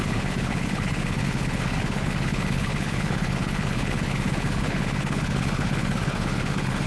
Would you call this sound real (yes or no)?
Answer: no